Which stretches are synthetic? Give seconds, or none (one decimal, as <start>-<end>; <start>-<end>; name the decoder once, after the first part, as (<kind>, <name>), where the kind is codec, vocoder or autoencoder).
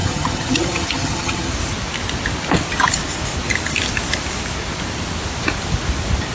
0.0-1.5 (vocoder, HiFi-GAN)